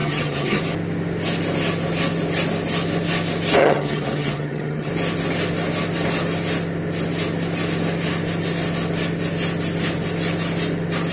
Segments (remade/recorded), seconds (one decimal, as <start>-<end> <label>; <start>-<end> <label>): 0.0-0.6 remade; 0.6-3.6 recorded; 3.6-4.9 remade; 4.9-11.1 recorded